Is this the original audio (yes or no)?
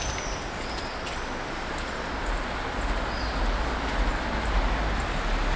yes